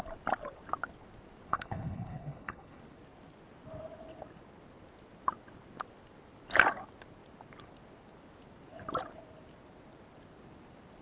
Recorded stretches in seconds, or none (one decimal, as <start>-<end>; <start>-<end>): 0.0-1.5; 2.8-11.0